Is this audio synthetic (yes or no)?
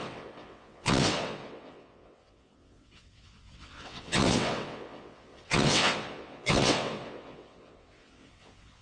yes